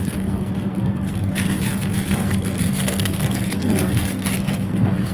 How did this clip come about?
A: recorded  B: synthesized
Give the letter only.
B